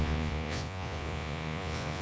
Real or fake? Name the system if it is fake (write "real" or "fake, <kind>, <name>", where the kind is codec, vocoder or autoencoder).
fake, vocoder, Vocos